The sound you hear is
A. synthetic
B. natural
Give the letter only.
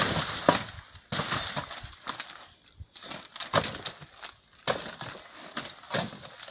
B